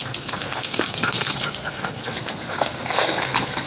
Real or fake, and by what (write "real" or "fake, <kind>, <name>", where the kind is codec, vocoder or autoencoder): fake, codec, SNAC